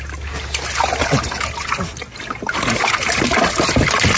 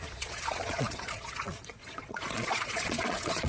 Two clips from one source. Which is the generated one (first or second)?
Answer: second